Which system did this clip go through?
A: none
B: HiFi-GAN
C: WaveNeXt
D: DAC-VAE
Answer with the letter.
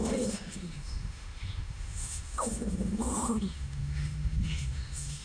D